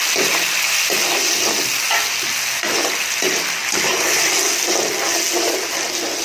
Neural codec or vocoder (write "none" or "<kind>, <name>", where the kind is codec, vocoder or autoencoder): none